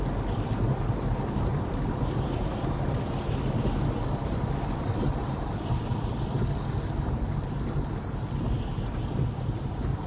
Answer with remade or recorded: recorded